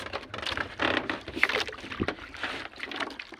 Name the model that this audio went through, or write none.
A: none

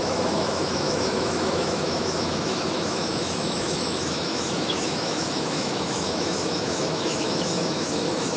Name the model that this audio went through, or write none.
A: autoencoder, DAC-VAE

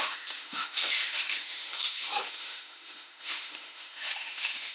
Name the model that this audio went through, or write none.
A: autoencoder, DAC-VAE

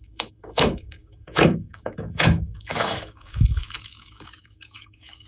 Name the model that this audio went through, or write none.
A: autoencoder, DAC-VAE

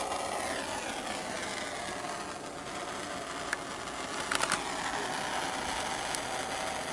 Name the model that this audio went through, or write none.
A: none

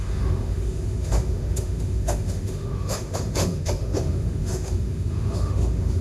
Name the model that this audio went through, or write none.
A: autoencoder, DAC-VAE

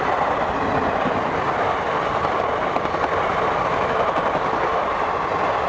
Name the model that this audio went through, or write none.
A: none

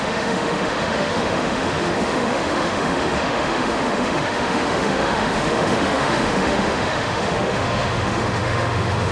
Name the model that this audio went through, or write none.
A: autoencoder, DAC-VAE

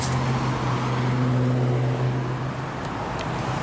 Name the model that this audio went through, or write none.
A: none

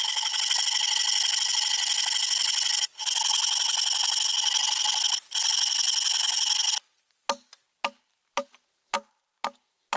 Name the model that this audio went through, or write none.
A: none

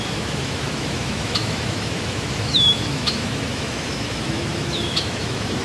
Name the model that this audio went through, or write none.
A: autoencoder, DAC-VAE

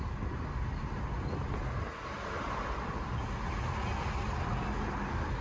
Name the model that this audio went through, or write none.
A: none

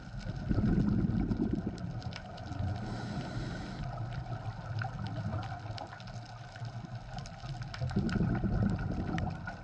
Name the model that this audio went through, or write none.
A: none